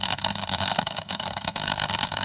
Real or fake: fake